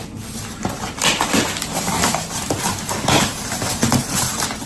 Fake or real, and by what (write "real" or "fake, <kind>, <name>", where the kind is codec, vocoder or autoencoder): real